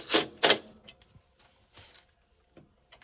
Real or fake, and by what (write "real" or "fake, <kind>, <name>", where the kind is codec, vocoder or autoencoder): real